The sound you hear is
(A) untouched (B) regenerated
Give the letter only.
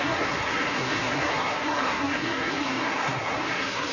B